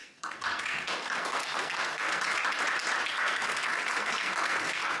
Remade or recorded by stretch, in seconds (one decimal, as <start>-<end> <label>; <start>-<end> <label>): 0.0-2.2 remade; 2.2-3.1 recorded; 3.1-5.0 remade